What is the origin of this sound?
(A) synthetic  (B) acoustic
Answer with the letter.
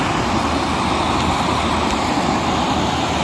B